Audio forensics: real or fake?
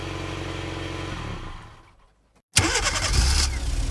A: real